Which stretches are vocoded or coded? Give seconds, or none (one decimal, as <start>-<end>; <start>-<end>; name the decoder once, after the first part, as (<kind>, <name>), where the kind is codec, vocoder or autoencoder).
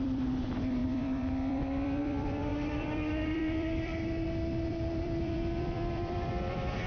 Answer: 0.0-3.9 (vocoder, BigVGAN v2); 4.7-6.9